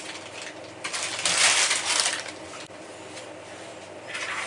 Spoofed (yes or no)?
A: no